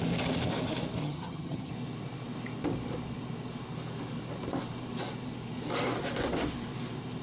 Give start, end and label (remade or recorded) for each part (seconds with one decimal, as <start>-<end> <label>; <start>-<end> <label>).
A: 0.0-1.0 recorded; 1.0-1.7 remade; 1.7-7.2 recorded